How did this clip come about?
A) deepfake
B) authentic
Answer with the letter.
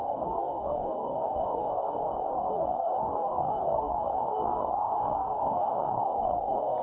A